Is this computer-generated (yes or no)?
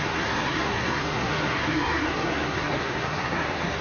yes